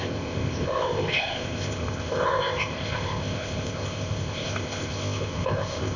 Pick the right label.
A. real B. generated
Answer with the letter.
B